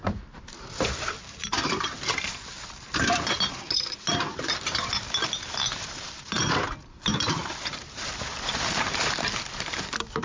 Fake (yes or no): yes